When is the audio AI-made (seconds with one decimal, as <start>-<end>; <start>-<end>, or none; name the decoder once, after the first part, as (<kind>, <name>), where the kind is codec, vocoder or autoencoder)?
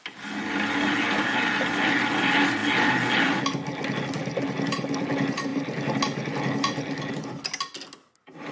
none